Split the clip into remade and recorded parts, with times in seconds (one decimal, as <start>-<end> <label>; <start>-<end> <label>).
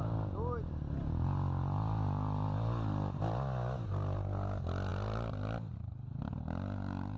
0.0-7.2 recorded